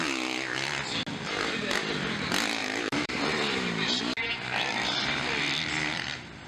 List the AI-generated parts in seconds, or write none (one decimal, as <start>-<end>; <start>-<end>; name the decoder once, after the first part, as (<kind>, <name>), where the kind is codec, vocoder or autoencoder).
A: 2.6-4.0 (vocoder, BigVGAN v2)